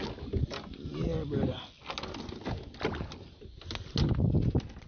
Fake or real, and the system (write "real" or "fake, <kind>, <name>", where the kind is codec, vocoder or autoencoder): real